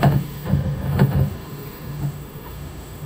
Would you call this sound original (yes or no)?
no